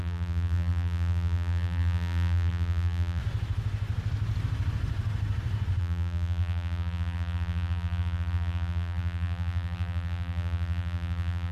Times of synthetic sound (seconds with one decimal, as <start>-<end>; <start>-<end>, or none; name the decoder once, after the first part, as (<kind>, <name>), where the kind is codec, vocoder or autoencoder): 0.0-3.2 (vocoder, BigVGAN v2); 5.8-11.5